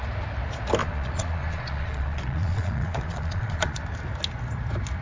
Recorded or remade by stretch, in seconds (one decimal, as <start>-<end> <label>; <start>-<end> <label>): 0.0-0.8 recorded; 0.8-3.8 remade; 3.8-5.0 recorded